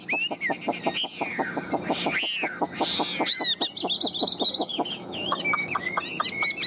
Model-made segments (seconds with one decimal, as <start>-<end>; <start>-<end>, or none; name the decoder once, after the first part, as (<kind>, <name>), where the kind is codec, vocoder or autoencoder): 4.6-5.7 (autoencoder, DAC-VAE)